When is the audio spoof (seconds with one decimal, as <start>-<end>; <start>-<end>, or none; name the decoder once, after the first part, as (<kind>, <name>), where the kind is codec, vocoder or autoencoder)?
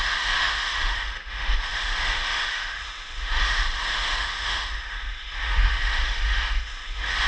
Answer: 0.0-7.3 (autoencoder, DAC-VAE)